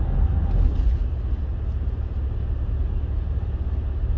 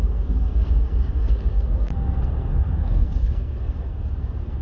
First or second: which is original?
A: first